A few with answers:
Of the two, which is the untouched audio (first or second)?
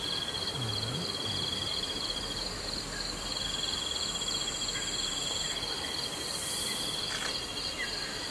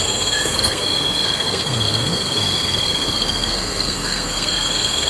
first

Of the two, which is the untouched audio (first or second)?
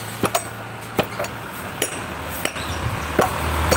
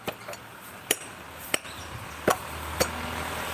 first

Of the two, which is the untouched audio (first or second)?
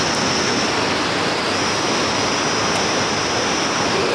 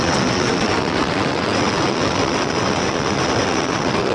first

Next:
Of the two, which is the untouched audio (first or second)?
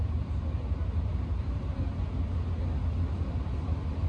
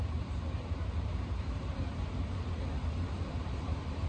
first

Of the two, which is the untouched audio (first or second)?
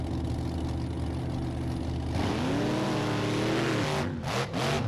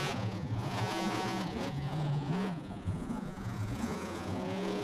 first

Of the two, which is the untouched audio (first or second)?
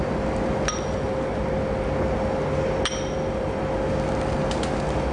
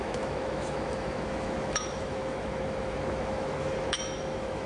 first